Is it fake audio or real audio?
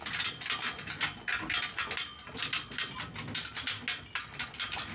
real